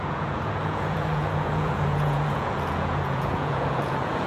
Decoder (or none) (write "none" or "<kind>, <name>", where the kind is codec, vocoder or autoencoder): vocoder, Vocos